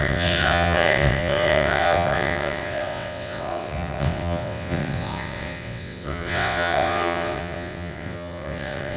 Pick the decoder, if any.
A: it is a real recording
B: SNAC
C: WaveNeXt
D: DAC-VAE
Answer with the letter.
C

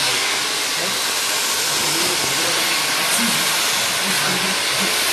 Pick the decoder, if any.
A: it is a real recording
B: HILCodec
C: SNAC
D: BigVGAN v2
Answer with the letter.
A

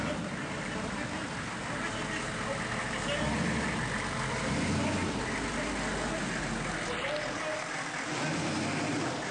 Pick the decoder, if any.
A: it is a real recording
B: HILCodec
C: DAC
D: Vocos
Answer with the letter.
A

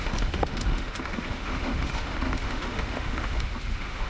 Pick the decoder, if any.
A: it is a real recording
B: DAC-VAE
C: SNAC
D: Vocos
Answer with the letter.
B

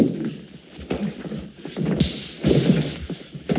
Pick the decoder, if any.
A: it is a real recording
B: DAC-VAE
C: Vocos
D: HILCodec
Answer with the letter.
A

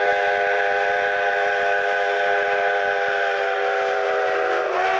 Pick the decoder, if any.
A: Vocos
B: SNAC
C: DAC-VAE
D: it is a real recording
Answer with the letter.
D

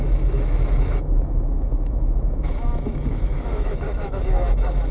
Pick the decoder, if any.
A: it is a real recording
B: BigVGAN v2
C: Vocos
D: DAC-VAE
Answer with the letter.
D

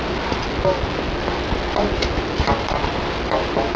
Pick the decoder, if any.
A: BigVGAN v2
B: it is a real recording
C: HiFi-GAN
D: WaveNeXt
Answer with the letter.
B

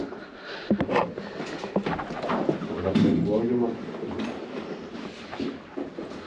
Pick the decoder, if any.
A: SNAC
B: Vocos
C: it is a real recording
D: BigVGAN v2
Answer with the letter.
C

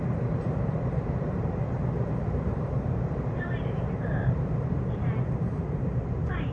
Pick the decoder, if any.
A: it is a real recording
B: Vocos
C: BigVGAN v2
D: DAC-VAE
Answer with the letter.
C